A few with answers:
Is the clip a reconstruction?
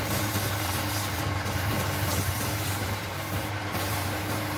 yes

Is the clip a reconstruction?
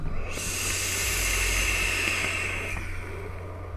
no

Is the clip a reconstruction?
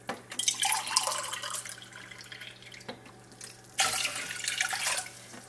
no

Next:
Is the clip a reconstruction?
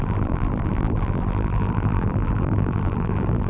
yes